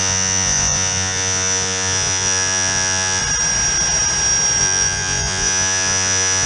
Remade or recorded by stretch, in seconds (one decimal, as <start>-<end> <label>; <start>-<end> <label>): 0.0-3.2 remade; 3.2-4.6 recorded; 4.6-6.5 remade